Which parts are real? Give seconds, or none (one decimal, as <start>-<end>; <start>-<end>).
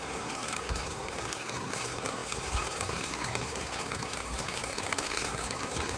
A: none